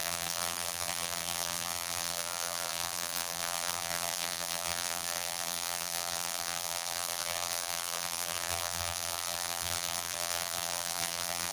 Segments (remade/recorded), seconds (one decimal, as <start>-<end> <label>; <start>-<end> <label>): 0.0-11.5 remade